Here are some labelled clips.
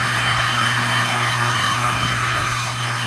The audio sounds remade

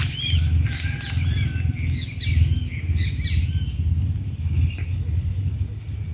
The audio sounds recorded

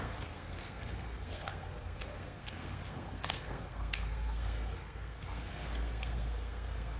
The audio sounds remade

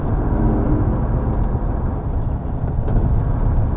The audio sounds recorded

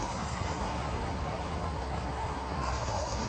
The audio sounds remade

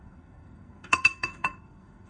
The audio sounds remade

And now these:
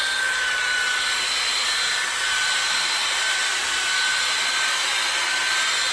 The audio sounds recorded